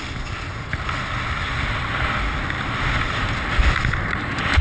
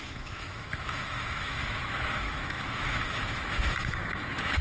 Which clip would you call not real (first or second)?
second